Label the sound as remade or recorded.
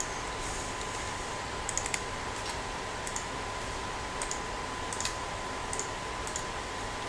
recorded